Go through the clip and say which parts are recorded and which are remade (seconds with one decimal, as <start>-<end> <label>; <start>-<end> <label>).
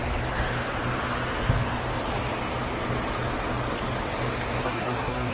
0.0-4.6 recorded; 4.6-5.3 remade